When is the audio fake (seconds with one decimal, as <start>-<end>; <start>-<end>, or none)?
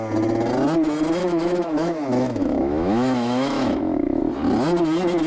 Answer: 1.2-4.2